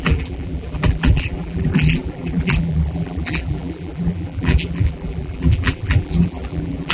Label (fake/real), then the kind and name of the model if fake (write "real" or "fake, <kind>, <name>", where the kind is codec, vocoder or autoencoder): fake, vocoder, BigVGAN v2